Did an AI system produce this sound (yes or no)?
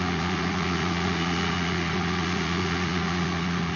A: yes